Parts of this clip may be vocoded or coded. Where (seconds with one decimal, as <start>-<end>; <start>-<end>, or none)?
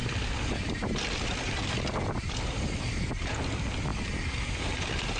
none